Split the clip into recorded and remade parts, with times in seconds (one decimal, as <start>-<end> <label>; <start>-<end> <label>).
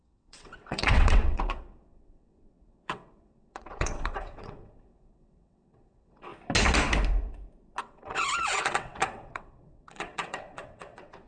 0.0-6.3 remade; 6.3-7.8 recorded; 7.8-11.3 remade